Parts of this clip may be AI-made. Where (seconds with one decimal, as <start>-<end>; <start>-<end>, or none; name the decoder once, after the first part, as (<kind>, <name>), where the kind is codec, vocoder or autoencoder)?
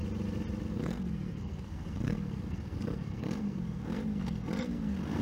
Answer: 0.7-5.2 (codec, SNAC)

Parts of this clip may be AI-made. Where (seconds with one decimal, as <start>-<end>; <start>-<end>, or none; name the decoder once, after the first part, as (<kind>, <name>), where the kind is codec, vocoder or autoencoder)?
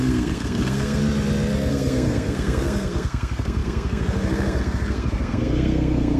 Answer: 0.0-1.0 (codec, SNAC); 1.7-6.2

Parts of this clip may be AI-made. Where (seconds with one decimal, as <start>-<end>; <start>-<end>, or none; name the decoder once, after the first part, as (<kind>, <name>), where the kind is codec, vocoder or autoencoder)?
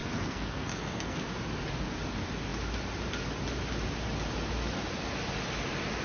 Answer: 0.0-1.3 (codec, SNAC)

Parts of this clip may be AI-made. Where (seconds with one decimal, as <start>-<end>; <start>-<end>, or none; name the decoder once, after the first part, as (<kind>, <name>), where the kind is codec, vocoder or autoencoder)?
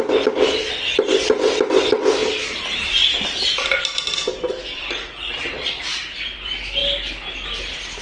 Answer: none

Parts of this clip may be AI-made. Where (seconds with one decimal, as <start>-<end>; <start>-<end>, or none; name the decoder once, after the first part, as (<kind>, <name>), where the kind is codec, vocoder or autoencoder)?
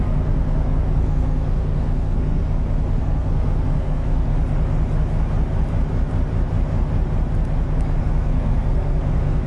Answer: 0.0-2.4 (codec, SNAC); 3.0-4.3; 8.0-9.5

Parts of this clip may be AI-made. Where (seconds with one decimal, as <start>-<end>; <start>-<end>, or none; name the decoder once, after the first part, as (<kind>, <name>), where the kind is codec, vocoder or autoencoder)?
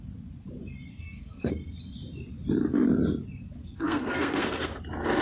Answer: 0.9-1.5 (codec, SNAC); 3.6-4.8